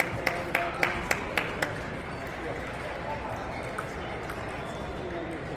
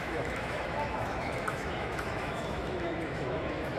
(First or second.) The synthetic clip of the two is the second